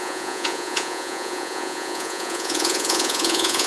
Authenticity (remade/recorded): remade